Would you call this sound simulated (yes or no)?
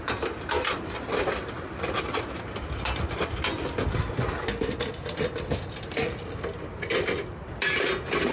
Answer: no